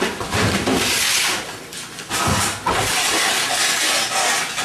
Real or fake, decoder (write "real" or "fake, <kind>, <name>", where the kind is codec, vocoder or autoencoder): real